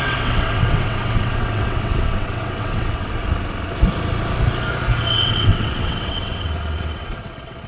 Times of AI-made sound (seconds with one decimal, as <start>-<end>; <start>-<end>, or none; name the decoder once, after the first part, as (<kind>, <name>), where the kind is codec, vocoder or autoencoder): 0.0-3.2 (vocoder, WaveNeXt); 5.1-7.7